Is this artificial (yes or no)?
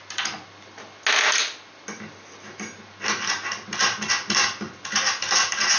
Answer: no